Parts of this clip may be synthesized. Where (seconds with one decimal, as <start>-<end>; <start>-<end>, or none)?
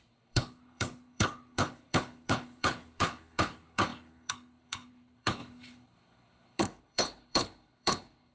0.0-8.3